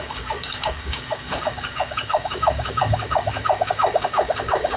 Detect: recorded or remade remade